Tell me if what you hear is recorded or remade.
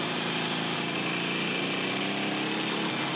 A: recorded